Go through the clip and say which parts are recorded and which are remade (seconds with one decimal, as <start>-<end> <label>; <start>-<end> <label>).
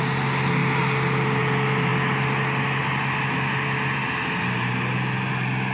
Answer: 0.0-5.7 recorded